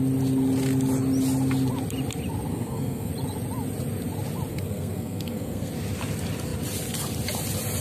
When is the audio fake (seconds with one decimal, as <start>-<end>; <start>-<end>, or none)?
2.5-3.1; 4.5-5.7